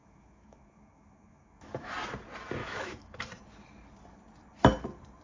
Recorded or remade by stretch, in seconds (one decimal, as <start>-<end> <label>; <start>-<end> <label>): 0.0-1.9 remade; 1.9-2.6 recorded; 2.6-3.2 remade; 3.2-5.2 recorded